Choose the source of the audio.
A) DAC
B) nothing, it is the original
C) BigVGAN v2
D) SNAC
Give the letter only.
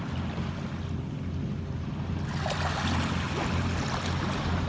B